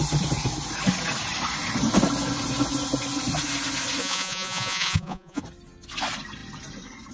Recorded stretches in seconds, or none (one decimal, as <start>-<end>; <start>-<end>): 0.0-4.0; 5.4-7.1